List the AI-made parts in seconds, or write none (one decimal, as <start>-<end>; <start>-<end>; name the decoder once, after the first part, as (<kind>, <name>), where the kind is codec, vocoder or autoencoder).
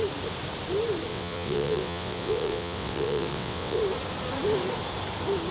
1.1-3.8 (vocoder, WaveNeXt)